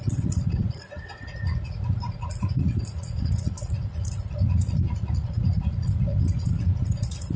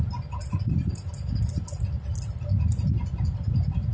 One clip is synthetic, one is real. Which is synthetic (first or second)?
first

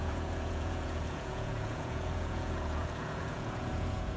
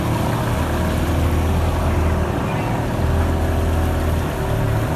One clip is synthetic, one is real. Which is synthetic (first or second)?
first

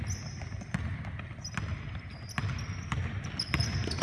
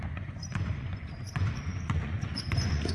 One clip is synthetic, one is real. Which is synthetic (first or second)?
second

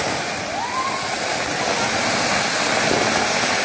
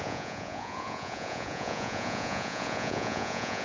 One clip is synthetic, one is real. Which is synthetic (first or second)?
second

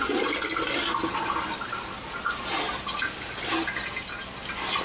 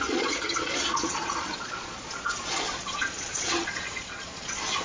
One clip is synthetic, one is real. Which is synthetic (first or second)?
second